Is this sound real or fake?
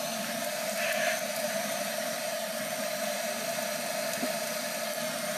real